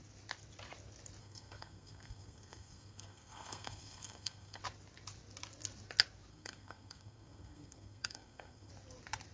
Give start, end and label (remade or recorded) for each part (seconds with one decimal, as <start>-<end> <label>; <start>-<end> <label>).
0.0-1.2 recorded; 1.2-4.6 remade; 4.6-6.3 recorded; 6.3-8.7 remade; 8.7-9.3 recorded